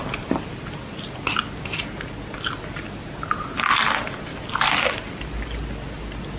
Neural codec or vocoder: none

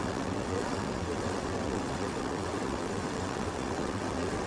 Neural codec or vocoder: vocoder, WaveNeXt